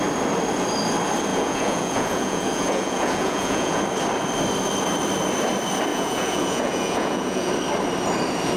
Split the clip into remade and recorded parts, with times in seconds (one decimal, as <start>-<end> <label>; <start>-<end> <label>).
0.0-1.3 recorded; 1.3-3.8 remade; 3.8-5.9 recorded; 5.9-7.5 remade; 7.5-8.6 recorded